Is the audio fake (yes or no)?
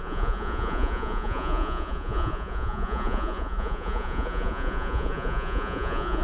yes